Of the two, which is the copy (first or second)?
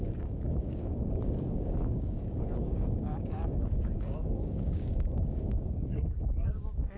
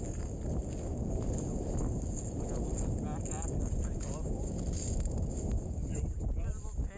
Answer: first